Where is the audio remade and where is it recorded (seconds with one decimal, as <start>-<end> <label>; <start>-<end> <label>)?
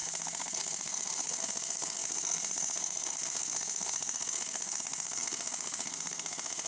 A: 0.0-6.7 remade